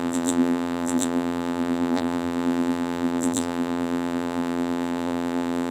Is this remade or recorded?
remade